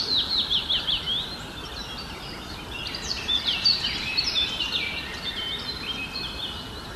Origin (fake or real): fake